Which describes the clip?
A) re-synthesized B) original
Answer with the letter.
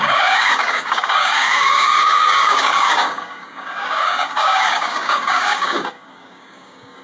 A